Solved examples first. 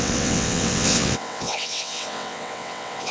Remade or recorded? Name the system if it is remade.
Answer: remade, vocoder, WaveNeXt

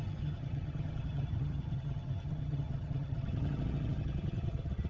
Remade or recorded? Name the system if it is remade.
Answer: remade, vocoder, HiFi-GAN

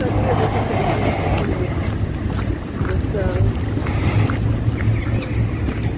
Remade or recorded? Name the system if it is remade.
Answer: recorded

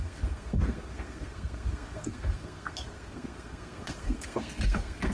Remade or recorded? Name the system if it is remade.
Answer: remade, codec, SNAC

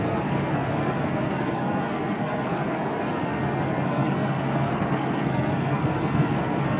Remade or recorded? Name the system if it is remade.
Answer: remade, codec, SNAC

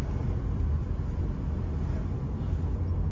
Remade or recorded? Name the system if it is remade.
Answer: recorded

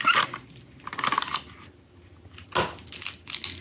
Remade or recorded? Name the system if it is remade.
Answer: recorded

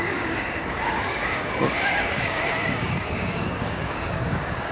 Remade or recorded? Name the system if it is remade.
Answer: remade, codec, DAC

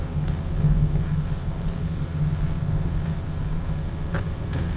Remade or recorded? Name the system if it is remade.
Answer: remade, codec, SNAC